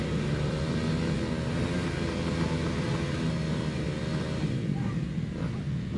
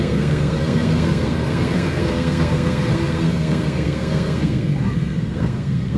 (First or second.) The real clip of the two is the first